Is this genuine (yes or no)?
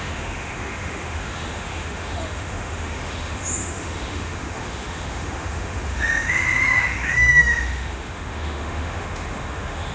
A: no